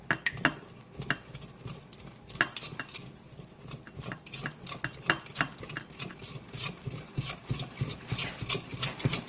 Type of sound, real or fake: real